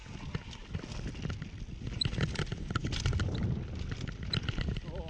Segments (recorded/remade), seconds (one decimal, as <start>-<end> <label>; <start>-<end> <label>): 0.0-5.1 recorded